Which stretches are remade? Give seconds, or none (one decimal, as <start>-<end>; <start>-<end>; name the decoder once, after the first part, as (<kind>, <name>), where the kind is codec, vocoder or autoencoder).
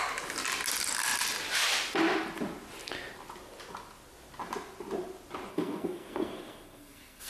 5.5-7.3 (codec, SNAC)